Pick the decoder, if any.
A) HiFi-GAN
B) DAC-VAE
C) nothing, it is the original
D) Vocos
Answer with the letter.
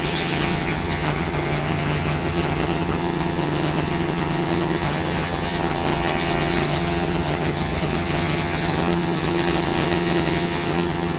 A